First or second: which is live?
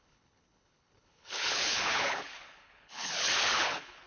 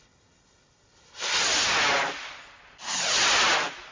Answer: second